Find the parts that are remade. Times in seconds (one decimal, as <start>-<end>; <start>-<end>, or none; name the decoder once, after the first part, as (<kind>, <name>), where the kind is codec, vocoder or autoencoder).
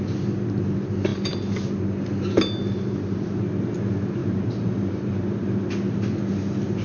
4.2-5.1 (vocoder, BigVGAN v2)